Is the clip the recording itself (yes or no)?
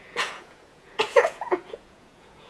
no